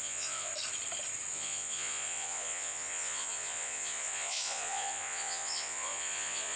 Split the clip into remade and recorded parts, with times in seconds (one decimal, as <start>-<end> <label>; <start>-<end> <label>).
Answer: 0.0-0.5 remade; 0.5-1.3 recorded; 1.3-6.6 remade